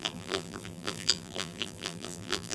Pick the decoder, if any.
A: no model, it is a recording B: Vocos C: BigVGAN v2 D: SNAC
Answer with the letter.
C